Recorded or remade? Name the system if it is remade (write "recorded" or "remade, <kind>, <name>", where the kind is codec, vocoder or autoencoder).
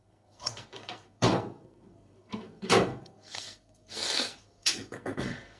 remade, codec, SNAC